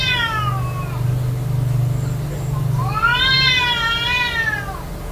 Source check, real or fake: real